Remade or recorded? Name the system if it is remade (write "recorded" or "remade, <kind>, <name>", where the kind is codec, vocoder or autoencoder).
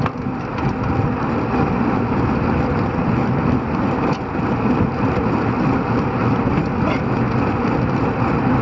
recorded